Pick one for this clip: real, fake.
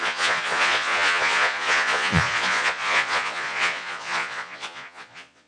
fake